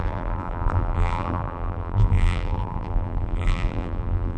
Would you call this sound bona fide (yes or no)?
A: no